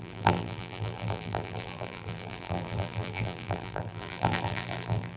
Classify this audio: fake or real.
fake